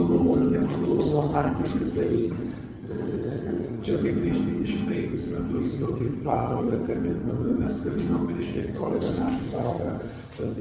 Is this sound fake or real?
fake